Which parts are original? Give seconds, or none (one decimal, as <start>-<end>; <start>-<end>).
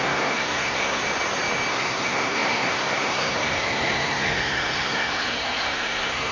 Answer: 1.0-1.7